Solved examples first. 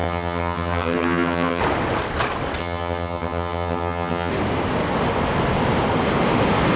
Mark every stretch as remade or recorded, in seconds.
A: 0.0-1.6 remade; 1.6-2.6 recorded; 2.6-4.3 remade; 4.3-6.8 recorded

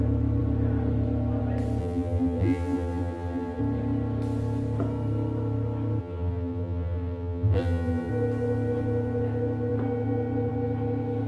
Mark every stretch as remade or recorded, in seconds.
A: 0.0-1.8 recorded; 1.8-3.6 remade; 3.6-6.0 recorded; 6.0-8.1 remade; 8.1-11.3 recorded

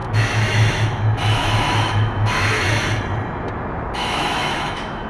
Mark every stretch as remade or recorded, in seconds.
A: 0.0-2.8 remade; 2.8-4.0 recorded; 4.0-5.1 remade

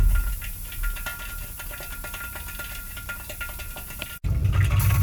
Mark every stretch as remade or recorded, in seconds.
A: 0.0-5.0 recorded

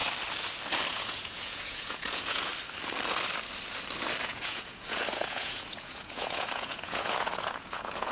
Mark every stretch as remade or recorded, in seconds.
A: 0.0-0.9 recorded; 0.9-2.5 remade; 2.5-4.2 recorded; 4.2-8.1 remade

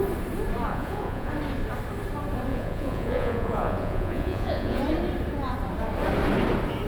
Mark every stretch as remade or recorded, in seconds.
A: 0.0-0.7 recorded; 0.7-1.3 remade; 1.3-2.5 recorded; 2.5-4.8 remade; 4.8-6.9 recorded